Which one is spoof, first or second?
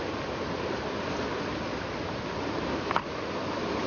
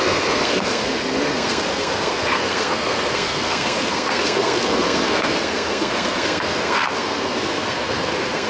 second